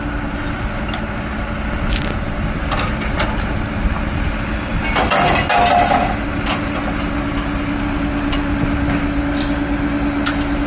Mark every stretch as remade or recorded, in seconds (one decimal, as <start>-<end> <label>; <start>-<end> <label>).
0.0-10.7 recorded